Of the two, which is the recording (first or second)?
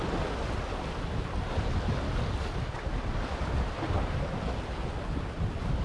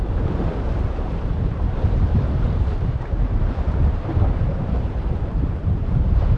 first